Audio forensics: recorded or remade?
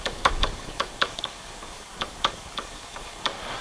remade